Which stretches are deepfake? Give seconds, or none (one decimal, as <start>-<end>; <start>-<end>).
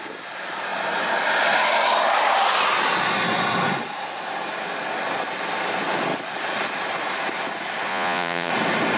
7.9-8.5